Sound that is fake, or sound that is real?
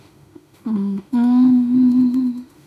fake